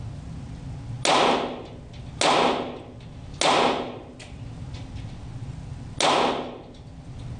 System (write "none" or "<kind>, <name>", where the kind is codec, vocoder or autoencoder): none